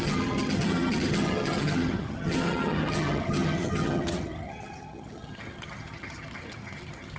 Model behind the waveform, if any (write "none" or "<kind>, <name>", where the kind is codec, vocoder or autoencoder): vocoder, HiFi-GAN